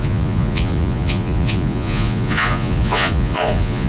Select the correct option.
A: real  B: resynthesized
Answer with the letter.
B